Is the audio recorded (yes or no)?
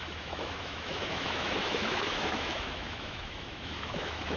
no